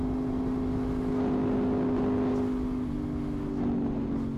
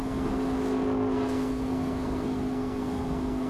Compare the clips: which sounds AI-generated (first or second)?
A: second